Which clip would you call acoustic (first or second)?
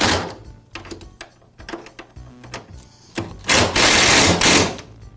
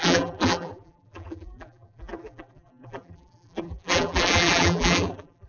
first